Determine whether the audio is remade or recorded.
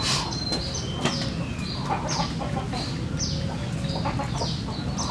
recorded